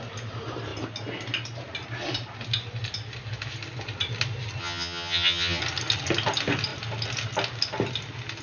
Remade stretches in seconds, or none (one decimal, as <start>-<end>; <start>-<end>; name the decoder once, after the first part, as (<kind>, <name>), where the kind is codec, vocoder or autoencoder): 4.6-5.6 (vocoder, HiFi-GAN)